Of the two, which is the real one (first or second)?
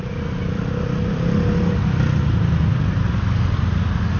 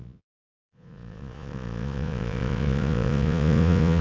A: first